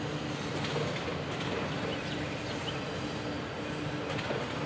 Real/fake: real